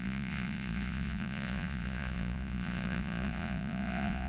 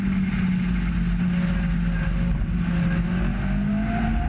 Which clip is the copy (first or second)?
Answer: first